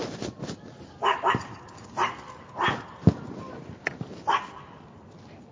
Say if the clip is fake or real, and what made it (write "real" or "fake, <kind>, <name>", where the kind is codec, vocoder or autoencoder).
real